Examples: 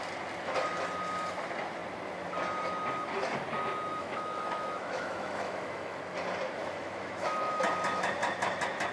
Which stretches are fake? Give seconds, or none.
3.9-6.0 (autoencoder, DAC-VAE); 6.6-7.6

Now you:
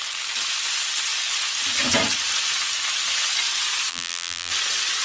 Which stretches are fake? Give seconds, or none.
3.9-4.5 (vocoder, BigVGAN v2)

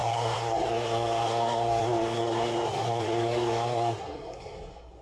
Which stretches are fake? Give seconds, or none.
0.0-5.0 (codec, SNAC)

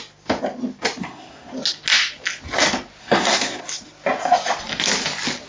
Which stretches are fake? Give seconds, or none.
1.0-1.5 (codec, SNAC); 3.0-3.6